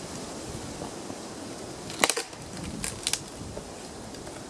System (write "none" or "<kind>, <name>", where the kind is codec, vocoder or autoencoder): none